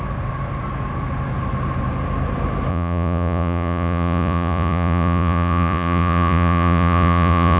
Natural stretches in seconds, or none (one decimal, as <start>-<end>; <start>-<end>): 0.0-2.7